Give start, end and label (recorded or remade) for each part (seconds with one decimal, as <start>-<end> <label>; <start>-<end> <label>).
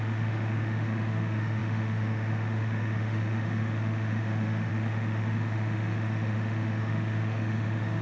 0.0-8.0 remade